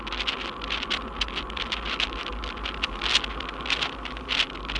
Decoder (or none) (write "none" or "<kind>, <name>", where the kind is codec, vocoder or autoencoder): none